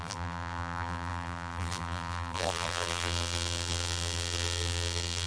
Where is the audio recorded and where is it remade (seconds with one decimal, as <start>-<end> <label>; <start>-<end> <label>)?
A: 0.0-5.3 remade